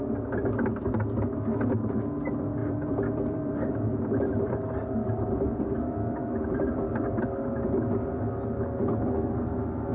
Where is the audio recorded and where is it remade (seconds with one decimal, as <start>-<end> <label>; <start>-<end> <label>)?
0.0-2.6 recorded; 2.6-7.2 remade; 7.2-9.9 recorded